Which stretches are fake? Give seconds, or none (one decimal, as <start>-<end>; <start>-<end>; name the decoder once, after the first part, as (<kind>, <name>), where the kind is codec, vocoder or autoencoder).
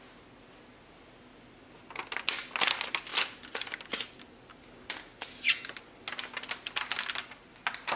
none